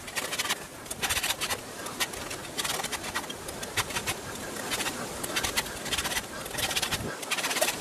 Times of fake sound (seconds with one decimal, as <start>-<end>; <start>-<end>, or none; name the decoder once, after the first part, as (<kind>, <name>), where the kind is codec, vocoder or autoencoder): none